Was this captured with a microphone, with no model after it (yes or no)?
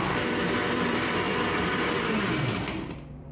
no